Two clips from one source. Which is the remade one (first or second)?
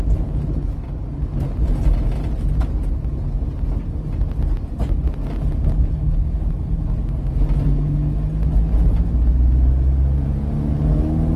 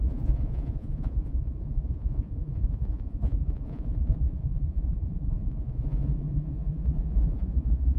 second